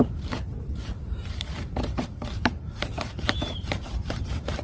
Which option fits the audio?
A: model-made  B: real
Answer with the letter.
A